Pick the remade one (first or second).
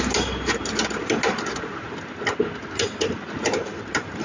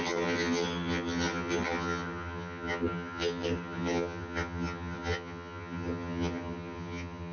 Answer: second